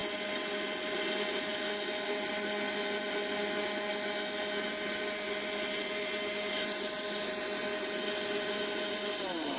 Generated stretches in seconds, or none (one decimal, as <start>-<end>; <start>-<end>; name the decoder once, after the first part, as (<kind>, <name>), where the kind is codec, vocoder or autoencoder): none